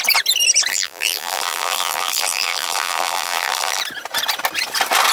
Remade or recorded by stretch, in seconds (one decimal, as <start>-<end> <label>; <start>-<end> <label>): 0.0-0.7 recorded; 0.7-3.8 remade; 3.8-5.1 recorded

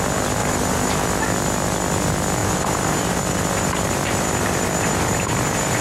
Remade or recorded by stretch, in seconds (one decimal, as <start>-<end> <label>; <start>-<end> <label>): 0.0-0.4 recorded; 0.4-1.2 remade; 1.2-2.4 recorded; 2.4-5.8 remade

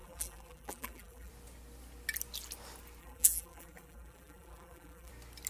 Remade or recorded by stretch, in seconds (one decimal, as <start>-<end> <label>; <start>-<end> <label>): 0.0-1.3 remade; 1.3-3.0 recorded; 3.0-5.1 remade; 5.1-5.5 recorded

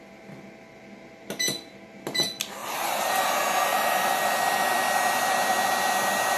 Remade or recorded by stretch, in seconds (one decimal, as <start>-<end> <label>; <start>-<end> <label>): 0.0-3.7 recorded; 3.7-4.3 remade; 4.3-6.4 recorded

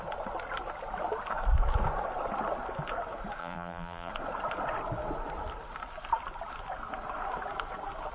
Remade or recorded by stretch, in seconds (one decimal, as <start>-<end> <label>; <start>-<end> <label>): 0.0-3.4 recorded; 3.4-4.1 remade; 4.1-8.1 recorded

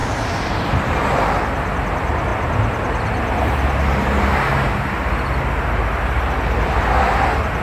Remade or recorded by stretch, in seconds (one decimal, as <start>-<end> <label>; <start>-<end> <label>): 0.0-1.3 remade; 1.3-7.6 recorded

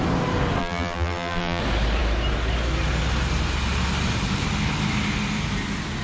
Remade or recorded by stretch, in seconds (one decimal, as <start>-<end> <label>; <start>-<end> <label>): 0.0-0.6 recorded; 0.6-1.6 remade; 1.6-6.0 recorded